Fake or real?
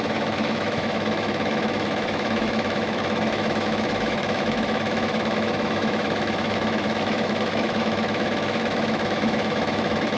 fake